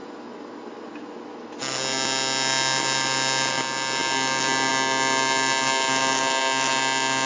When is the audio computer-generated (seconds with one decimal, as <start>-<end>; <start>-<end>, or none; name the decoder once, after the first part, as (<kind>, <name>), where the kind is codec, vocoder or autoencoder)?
none